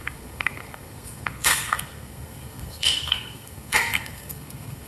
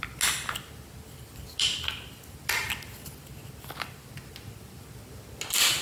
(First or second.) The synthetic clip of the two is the first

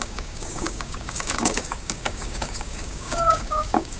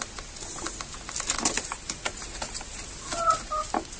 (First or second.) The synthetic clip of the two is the first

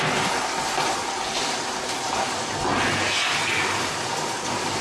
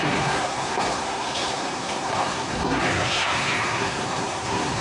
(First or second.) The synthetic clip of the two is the second